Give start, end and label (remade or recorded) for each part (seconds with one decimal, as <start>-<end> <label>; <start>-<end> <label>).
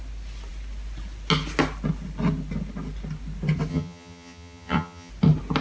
0.0-3.7 recorded; 3.7-5.1 remade; 5.1-5.6 recorded